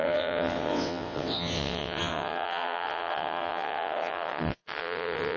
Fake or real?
fake